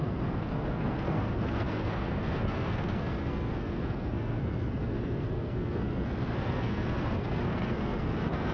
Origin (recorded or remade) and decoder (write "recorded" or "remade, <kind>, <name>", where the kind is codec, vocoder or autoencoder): remade, codec, SNAC